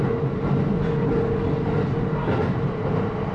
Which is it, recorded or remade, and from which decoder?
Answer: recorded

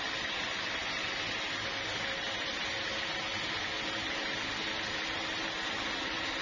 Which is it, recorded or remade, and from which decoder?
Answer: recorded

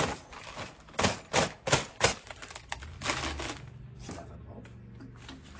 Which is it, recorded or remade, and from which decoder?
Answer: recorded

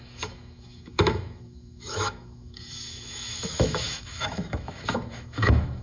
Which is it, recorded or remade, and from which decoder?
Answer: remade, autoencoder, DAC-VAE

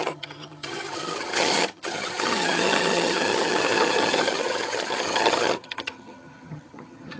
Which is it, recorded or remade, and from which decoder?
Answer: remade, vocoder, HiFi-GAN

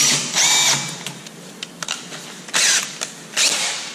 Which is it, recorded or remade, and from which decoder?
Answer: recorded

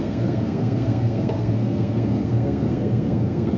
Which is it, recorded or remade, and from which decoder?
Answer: remade, codec, SNAC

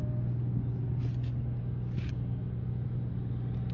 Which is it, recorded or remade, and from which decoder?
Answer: recorded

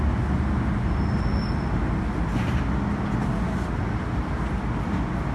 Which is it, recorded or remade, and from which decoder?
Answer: recorded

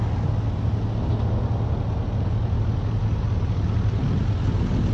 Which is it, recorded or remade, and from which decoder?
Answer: recorded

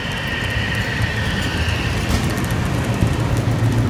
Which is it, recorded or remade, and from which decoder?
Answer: recorded